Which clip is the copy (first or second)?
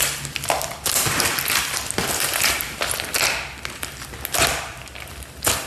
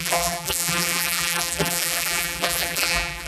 second